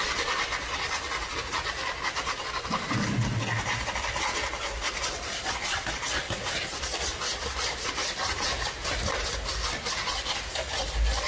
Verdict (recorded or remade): recorded